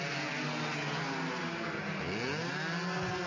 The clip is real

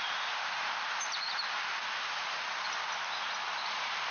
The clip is real